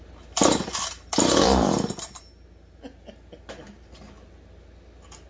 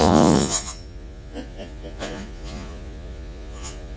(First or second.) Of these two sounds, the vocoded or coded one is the second